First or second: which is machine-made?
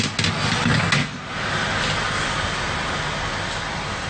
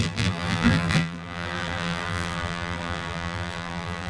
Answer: second